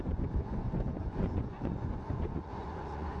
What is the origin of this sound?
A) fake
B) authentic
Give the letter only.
A